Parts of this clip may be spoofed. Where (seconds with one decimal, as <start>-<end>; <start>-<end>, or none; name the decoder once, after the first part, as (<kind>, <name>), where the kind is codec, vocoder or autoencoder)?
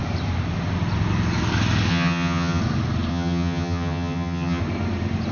1.9-2.6 (vocoder, HiFi-GAN); 3.1-4.6